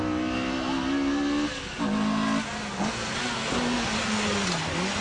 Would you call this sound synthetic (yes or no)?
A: no